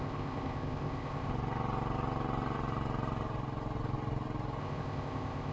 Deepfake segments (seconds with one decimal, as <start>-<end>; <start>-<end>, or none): 0.0-1.3; 4.6-5.5